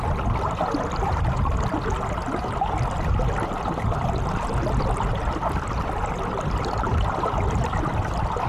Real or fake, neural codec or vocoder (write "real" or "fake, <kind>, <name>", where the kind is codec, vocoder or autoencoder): real